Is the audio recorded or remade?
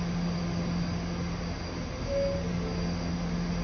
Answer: recorded